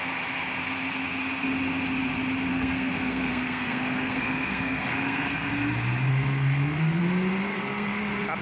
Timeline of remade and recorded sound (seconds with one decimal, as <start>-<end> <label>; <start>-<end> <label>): 0.0-2.5 recorded; 2.5-5.5 remade; 5.5-6.1 recorded; 6.1-7.0 remade; 7.0-7.5 recorded; 7.5-8.0 remade; 8.0-8.4 recorded